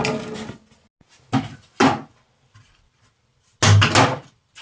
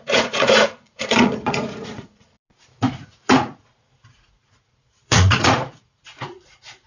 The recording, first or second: first